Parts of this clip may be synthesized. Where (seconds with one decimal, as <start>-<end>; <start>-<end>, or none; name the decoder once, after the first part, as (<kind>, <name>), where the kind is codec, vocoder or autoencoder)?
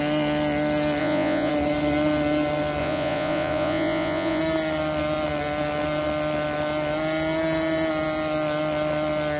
1.0-1.5 (vocoder, Vocos); 2.8-4.4